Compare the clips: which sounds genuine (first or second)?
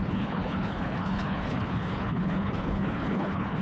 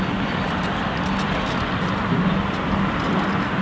second